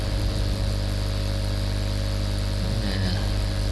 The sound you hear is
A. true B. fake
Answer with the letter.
A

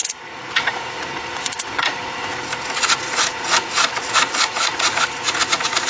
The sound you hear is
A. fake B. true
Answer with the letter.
A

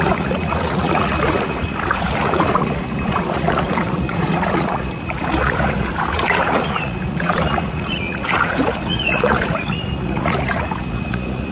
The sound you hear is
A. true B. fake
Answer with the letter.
B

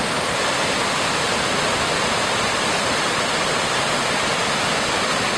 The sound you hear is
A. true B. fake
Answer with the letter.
A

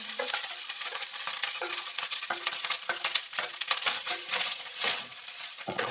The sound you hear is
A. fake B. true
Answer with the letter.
A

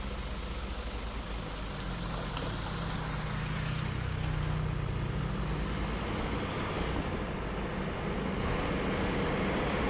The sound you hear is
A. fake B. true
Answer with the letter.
B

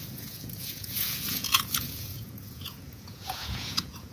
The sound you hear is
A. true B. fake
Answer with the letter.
B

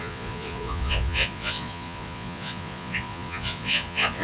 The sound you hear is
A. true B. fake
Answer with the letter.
B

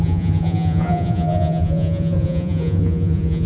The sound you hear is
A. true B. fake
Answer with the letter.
B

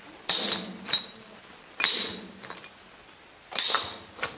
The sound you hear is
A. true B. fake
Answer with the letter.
A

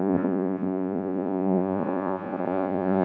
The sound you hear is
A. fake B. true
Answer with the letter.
A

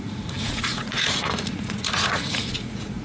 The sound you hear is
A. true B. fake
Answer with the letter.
B